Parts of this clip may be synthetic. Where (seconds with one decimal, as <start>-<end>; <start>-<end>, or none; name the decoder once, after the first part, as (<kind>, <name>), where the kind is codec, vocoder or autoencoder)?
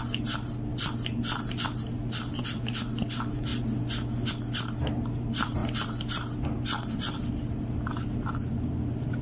0.0-3.5 (vocoder, BigVGAN v2); 4.3-5.6; 7.3-9.2